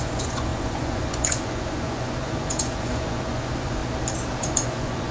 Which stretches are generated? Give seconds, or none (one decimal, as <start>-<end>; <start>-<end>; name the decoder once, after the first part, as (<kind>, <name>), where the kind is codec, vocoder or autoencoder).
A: 0.0-3.8 (vocoder, Vocos); 4.4-5.1